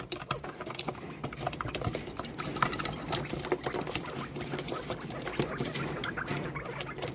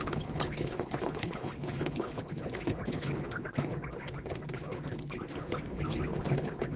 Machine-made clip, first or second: second